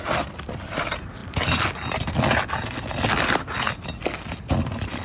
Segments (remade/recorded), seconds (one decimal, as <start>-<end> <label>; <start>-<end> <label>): 0.0-5.0 recorded